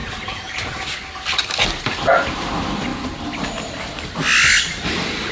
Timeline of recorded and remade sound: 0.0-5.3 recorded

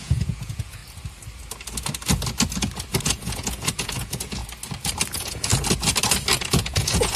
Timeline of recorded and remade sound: 0.0-0.8 remade; 0.8-3.0 recorded; 3.0-4.4 remade; 4.4-5.1 recorded; 5.1-5.5 remade; 5.5-6.4 recorded; 6.4-7.2 remade

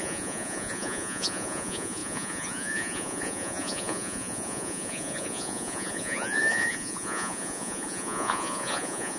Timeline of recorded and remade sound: 0.0-9.2 remade

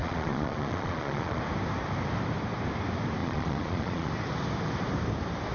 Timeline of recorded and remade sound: 0.0-1.4 remade; 1.4-3.2 recorded; 3.2-4.1 remade; 4.1-5.5 recorded

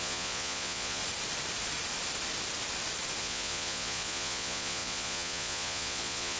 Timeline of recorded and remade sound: 0.0-1.0 remade; 1.0-3.2 recorded; 3.2-6.4 remade

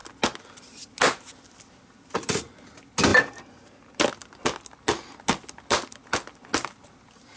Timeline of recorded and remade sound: 0.0-7.4 recorded

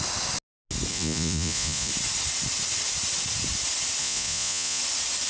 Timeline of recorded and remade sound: 0.0-0.9 recorded; 0.9-1.9 remade; 1.9-4.0 recorded; 4.0-4.8 remade; 4.8-5.3 recorded

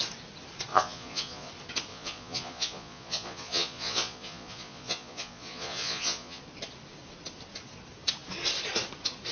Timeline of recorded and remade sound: 0.0-0.7 recorded; 0.7-1.5 remade; 1.5-1.9 recorded; 1.9-6.4 remade; 6.4-9.3 recorded